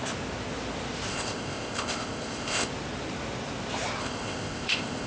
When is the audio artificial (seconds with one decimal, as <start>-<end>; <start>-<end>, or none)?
1.1-2.7; 4.0-5.1

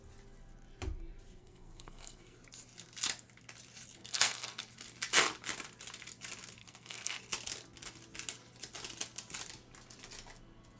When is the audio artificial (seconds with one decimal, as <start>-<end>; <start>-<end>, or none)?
1.4-2.4; 4.0-4.6; 6.6-7.2

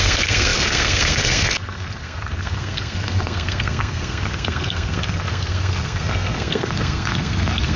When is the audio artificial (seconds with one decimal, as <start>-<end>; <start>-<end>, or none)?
0.0-7.8

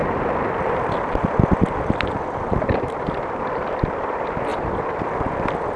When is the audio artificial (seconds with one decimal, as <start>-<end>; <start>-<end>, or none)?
0.0-4.5

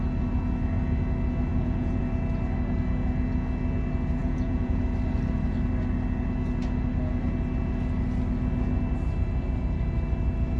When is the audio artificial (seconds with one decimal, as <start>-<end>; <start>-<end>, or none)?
1.5-2.0; 4.2-4.8

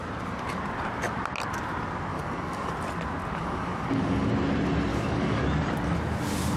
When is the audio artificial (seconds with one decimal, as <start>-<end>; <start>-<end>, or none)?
2.1-2.7; 3.4-4.3; 4.9-5.4

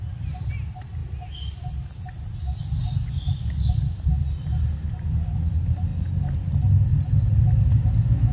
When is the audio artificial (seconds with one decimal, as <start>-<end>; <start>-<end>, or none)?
none